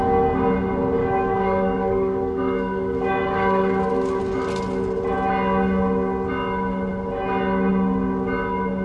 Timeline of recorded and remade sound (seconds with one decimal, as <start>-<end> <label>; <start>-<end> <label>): 0.0-1.0 recorded; 1.0-4.2 remade; 4.2-8.8 recorded